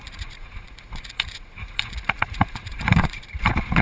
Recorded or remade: remade